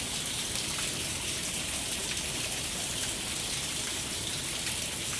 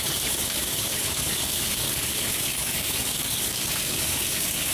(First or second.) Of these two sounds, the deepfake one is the second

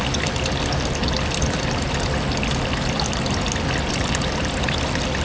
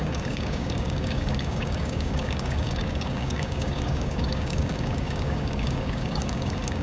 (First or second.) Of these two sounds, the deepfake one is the second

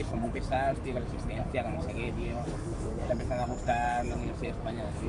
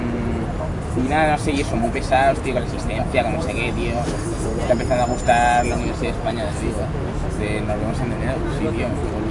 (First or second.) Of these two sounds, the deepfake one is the first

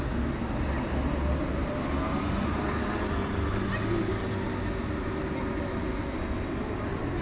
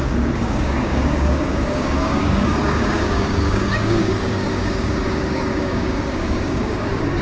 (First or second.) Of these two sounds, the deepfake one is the second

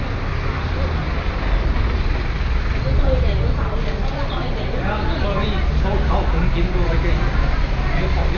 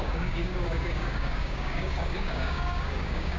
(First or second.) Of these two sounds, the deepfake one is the second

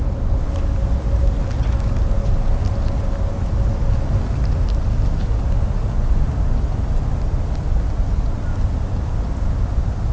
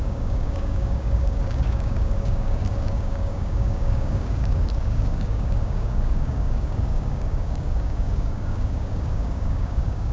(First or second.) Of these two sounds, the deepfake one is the second